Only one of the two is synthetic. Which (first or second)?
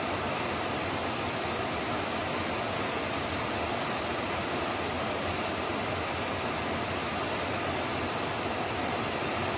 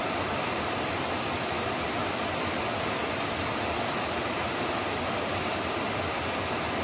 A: second